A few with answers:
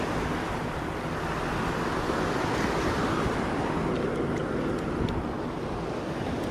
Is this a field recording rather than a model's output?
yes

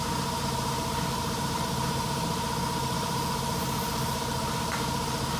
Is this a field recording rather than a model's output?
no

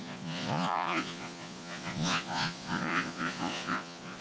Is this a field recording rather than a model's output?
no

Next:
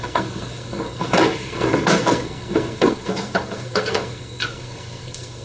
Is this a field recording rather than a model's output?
no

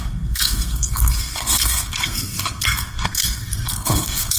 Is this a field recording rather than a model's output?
no